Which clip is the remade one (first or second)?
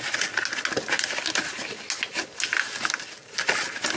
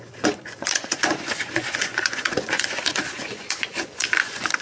second